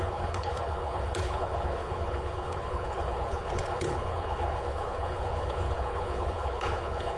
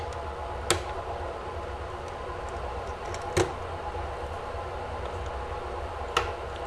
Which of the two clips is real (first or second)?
second